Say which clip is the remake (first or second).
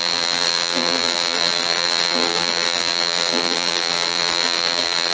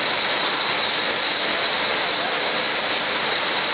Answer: first